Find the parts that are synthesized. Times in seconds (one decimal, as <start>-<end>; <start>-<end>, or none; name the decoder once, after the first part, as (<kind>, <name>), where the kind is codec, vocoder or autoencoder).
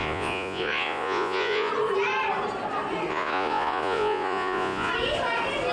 0.0-1.7 (vocoder, Vocos); 3.1-4.9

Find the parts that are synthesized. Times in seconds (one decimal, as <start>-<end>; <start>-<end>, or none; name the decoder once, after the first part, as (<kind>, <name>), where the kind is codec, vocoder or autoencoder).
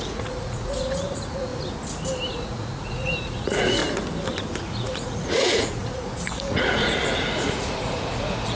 0.0-1.5 (vocoder, Vocos); 2.3-3.8; 4.6-8.6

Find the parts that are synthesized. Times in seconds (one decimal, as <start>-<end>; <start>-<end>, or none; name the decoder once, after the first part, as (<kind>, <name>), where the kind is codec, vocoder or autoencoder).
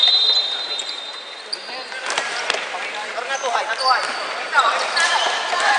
none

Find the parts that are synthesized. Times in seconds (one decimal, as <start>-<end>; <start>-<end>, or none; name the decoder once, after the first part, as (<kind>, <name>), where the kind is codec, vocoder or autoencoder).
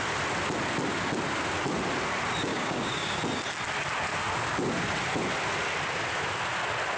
2.5-3.2 (codec, DAC)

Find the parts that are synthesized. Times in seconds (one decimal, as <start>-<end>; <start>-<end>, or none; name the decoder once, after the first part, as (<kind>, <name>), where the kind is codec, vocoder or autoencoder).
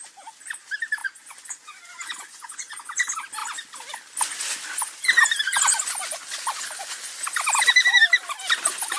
1.0-2.8 (vocoder, Vocos)